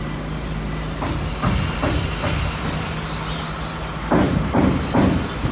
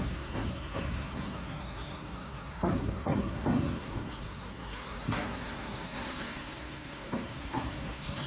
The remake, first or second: second